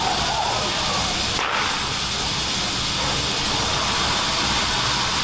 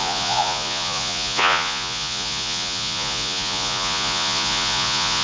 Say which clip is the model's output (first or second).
second